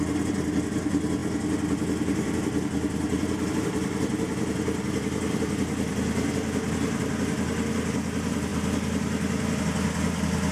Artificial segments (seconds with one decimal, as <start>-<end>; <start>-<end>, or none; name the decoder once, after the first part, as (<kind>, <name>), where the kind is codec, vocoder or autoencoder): none